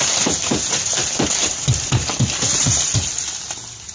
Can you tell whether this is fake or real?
real